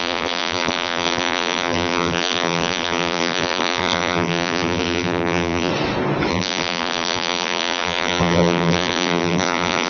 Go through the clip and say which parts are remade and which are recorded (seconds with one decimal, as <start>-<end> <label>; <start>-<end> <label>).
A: 0.0-5.7 remade; 5.7-6.3 recorded; 6.3-9.9 remade